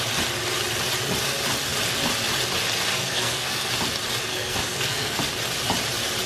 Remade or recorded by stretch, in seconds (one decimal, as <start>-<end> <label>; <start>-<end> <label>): 0.0-3.0 recorded; 3.0-3.7 remade; 3.7-4.3 recorded; 4.3-5.2 remade; 5.2-6.3 recorded